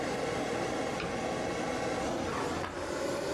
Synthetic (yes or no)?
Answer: no